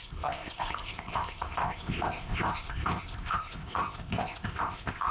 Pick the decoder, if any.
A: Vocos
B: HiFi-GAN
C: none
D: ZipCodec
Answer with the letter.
D